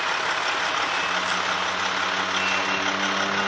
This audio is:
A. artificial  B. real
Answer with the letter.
B